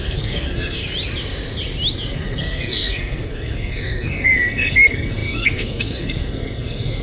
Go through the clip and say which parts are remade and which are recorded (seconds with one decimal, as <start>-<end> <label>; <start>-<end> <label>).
0.0-0.8 remade; 0.8-2.1 recorded; 2.1-7.0 remade